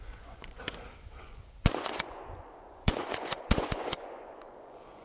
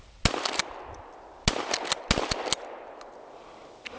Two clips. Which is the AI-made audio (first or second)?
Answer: first